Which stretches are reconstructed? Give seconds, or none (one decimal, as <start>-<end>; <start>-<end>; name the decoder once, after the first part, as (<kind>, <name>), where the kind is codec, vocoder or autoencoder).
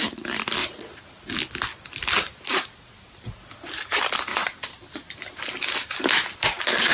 0.6-1.1 (vocoder, Vocos); 4.3-5.1